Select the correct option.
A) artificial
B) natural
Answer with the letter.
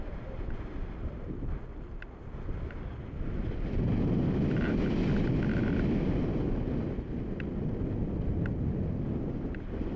B